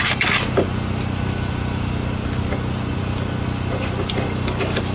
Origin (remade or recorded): recorded